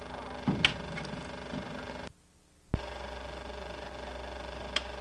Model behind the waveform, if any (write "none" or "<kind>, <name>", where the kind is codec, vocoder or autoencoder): none